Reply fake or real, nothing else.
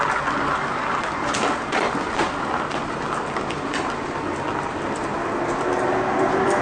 real